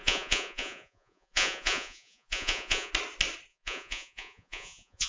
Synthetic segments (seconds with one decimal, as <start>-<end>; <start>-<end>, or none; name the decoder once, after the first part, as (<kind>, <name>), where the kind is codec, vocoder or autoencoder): 0.0-2.9 (vocoder, Vocos); 3.5-5.1